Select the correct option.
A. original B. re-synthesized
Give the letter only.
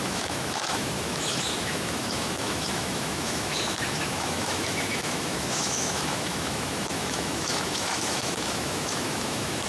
B